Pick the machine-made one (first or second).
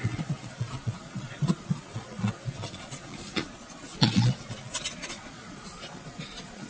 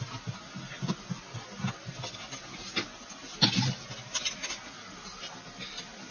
first